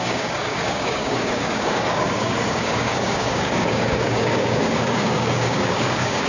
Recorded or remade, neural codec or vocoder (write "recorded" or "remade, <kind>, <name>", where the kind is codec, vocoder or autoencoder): remade, codec, DAC